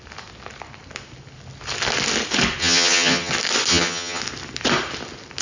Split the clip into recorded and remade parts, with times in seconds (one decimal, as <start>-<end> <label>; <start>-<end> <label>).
0.0-2.6 recorded; 2.6-3.3 remade; 3.3-3.7 recorded; 3.7-4.2 remade; 4.2-5.4 recorded